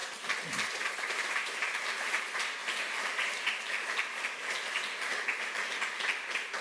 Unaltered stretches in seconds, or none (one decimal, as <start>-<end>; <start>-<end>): 0.0-1.0; 2.6-6.6